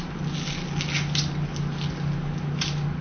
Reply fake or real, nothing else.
real